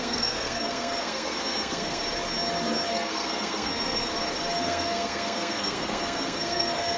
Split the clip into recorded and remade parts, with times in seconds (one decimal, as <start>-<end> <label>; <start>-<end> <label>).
0.0-2.0 remade; 2.0-2.9 recorded; 2.9-4.1 remade; 4.1-4.6 recorded; 4.6-7.0 remade